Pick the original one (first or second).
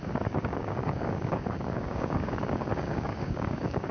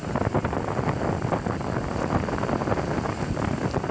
second